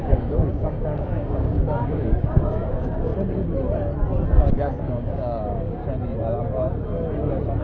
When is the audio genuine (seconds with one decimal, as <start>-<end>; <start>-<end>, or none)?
3.1-4.4; 5.8-7.6